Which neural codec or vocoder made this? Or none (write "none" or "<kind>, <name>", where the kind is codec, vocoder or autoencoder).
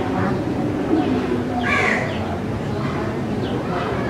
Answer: vocoder, BigVGAN v2